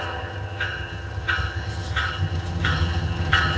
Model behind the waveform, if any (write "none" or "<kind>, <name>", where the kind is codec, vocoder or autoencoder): vocoder, HiFi-GAN